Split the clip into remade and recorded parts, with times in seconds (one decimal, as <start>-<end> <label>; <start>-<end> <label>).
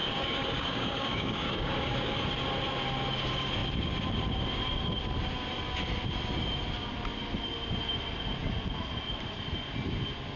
0.0-2.1 remade; 2.1-10.4 recorded